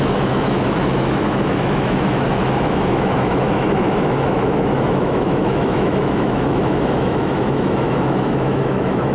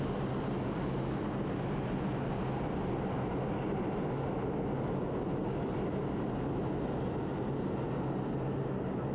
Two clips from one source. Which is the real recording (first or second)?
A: second